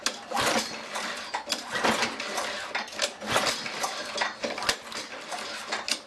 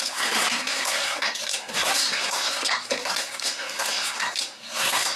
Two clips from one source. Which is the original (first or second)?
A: first